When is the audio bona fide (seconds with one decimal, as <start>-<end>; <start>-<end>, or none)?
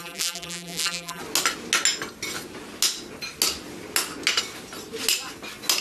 1.2-5.8